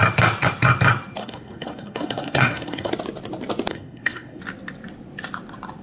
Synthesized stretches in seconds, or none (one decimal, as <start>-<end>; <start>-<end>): 1.2-2.9; 3.7-4.4